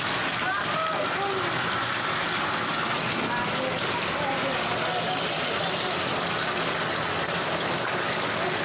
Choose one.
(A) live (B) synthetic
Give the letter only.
A